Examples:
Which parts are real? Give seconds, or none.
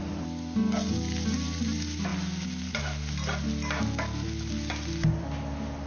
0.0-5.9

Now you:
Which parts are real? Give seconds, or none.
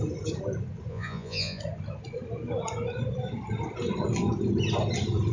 0.0-0.9; 1.6-5.3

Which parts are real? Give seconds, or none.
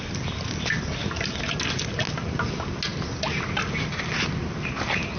0.0-5.2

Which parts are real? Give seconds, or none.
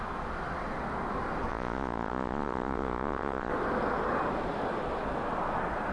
0.0-1.5; 3.5-5.9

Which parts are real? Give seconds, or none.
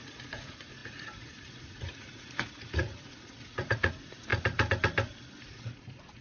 4.3-5.4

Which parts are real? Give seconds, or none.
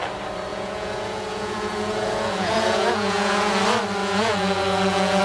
0.0-0.5; 3.6-4.0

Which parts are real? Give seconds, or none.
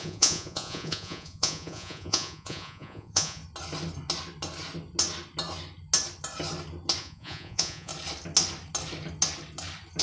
3.4-7.0; 7.9-10.0